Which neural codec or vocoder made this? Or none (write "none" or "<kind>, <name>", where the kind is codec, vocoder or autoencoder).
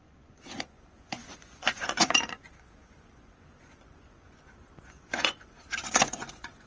vocoder, Vocos